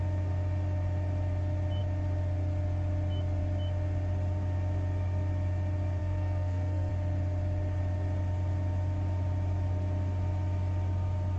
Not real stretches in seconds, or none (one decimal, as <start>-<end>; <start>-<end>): 6.0-6.9